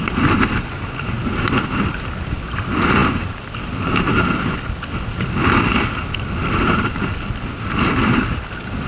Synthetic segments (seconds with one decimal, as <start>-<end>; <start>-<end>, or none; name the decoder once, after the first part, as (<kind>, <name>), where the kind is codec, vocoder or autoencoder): none